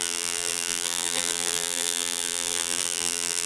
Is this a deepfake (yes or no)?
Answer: yes